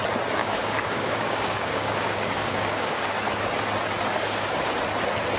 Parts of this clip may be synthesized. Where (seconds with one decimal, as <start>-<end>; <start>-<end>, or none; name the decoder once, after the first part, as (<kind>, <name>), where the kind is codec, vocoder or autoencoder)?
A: 0.4-3.1 (codec, DAC); 4.1-4.8